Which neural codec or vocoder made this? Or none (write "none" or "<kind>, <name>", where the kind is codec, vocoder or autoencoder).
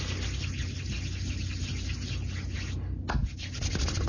none